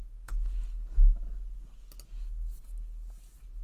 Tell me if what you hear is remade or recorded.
recorded